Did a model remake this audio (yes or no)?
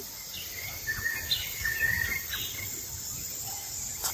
no